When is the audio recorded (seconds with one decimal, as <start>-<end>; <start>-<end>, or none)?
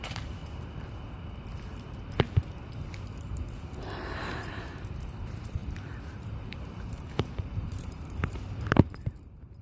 0.4-3.9